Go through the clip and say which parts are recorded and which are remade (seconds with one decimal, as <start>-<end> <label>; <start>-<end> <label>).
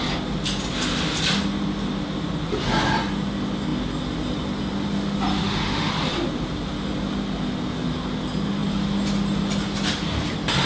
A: 0.0-5.3 recorded; 5.3-5.9 remade; 5.9-10.7 recorded